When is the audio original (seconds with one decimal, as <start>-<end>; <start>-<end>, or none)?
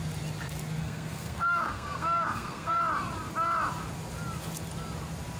0.0-0.8; 2.8-5.4